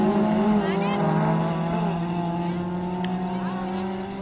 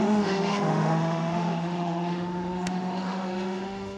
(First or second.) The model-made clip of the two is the second